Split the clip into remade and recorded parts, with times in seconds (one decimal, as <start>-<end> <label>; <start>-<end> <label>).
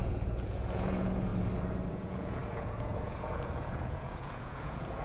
0.0-1.3 remade; 1.3-1.9 recorded; 1.9-5.0 remade